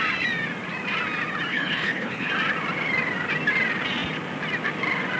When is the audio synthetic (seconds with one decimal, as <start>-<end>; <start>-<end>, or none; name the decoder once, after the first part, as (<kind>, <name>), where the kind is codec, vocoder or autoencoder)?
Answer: 1.5-2.3 (codec, HILCodec)